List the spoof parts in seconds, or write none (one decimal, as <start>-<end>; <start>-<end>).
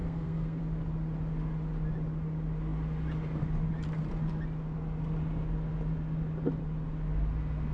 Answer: 0.0-0.6